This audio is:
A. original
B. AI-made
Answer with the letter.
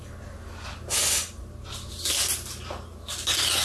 A